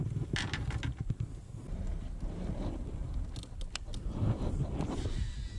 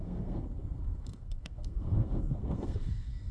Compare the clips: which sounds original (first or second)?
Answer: first